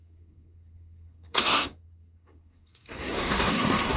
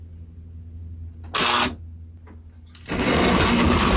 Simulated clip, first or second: first